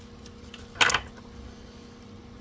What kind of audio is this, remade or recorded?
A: recorded